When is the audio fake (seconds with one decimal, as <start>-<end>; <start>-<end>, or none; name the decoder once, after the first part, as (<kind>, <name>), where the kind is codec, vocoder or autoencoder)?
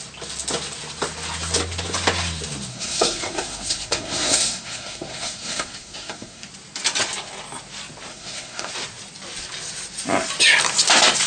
2.7-6.5 (codec, SNAC); 8.1-8.7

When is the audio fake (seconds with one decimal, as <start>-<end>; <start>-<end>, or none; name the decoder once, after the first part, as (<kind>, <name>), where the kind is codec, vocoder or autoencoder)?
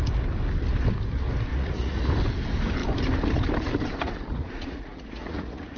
1.5-2.1 (vocoder, Vocos); 4.3-5.8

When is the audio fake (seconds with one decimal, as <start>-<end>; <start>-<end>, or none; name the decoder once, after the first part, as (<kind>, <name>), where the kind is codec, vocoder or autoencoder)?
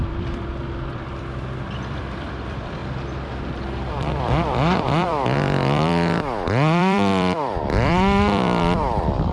0.0-2.8 (vocoder, BigVGAN v2); 3.9-9.3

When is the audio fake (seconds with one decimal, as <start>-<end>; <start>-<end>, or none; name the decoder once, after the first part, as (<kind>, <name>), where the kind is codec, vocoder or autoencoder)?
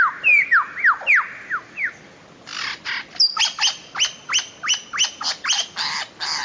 none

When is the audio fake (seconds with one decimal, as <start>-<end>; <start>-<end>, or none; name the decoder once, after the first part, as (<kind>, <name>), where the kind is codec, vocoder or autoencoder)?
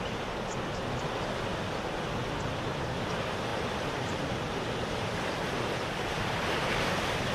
3.5-6.4 (vocoder, BigVGAN v2)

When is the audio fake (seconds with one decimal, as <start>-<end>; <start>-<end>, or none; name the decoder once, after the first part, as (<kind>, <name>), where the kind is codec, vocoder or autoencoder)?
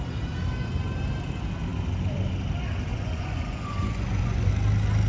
2.9-4.5 (vocoder, Vocos)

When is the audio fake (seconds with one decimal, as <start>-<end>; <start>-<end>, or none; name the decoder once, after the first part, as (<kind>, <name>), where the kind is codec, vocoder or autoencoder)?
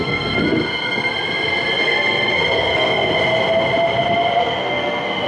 0.0-1.1 (codec, SNAC); 1.8-3.1; 4.4-5.3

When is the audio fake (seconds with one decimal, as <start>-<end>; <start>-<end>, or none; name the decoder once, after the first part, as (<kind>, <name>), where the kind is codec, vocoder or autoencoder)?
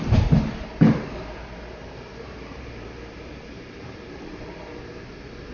2.1-4.1 (vocoder, BigVGAN v2)